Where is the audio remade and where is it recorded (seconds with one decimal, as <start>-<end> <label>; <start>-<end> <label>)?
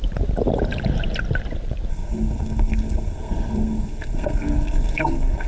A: 0.0-1.9 recorded; 1.9-5.5 remade